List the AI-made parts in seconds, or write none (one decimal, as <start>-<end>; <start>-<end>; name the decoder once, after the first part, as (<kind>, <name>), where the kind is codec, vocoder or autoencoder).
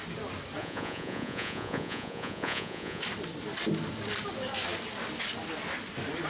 0.6-3.0 (vocoder, Vocos)